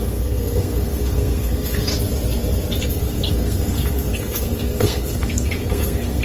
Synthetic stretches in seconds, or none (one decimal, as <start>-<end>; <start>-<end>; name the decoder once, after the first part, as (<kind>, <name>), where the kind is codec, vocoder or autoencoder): 0.0-1.9 (codec, SNAC); 2.8-6.2